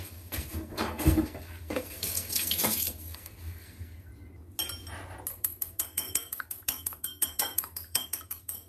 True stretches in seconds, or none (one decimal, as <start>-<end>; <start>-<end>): 4.1-5.3